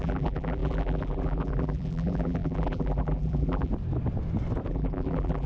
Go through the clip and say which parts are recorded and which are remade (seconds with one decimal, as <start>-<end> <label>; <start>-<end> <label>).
0.0-3.7 remade; 3.7-4.7 recorded; 4.7-5.5 remade